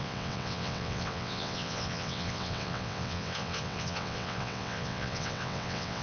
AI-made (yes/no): yes